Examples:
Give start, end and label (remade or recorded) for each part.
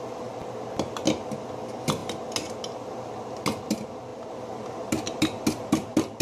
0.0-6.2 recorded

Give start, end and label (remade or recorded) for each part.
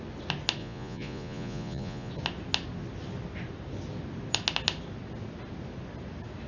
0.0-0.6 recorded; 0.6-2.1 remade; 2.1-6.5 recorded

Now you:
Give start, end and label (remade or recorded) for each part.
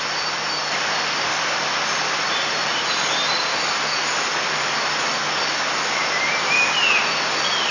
0.0-7.7 recorded